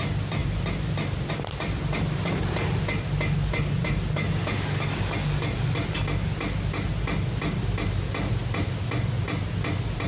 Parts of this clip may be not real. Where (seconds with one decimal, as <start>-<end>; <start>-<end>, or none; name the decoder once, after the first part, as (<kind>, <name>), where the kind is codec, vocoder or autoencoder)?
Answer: none